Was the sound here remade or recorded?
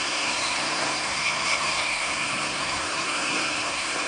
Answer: remade